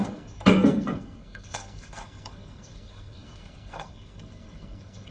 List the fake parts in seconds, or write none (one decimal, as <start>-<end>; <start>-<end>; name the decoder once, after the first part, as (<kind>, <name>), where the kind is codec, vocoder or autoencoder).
0.0-5.1 (codec, SNAC)